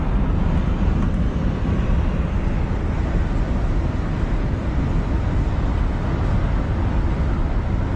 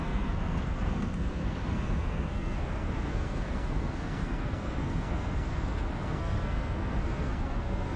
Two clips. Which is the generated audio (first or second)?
second